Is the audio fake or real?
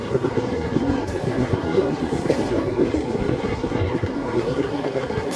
fake